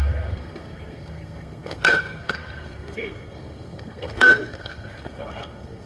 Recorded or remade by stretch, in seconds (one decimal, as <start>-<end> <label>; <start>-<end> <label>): 0.0-5.9 remade